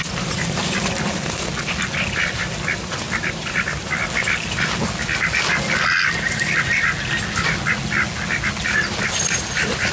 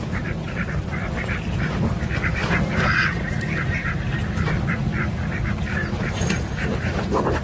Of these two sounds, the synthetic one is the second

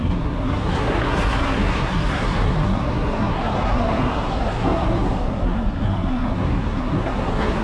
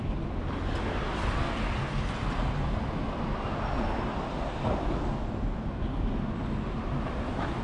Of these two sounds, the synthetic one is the first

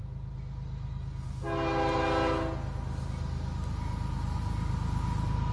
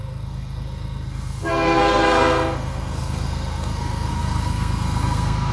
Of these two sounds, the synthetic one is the second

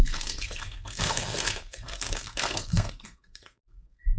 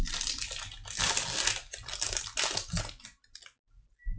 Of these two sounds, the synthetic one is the first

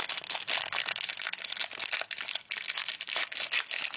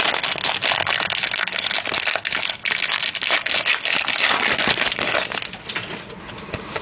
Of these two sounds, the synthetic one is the first